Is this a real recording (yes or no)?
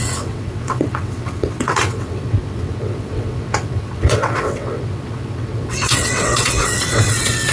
no